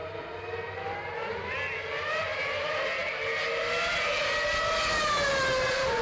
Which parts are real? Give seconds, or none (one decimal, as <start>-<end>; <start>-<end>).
0.0-6.0